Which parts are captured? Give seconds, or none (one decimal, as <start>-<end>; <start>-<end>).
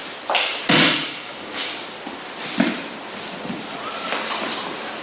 0.0-1.2; 1.7-5.0